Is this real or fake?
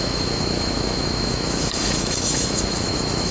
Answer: fake